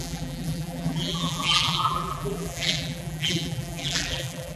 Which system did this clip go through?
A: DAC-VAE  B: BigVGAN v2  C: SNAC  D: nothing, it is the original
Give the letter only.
B